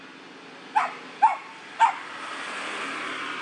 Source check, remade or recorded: recorded